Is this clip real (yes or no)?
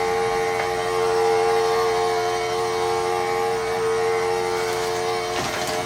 yes